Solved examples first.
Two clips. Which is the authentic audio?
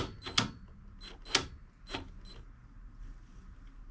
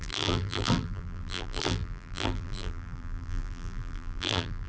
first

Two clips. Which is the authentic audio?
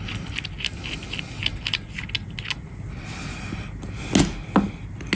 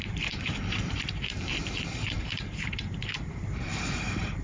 first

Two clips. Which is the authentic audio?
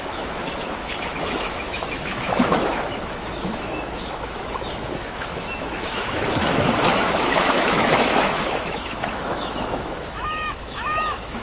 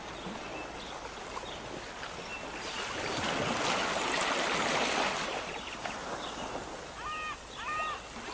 second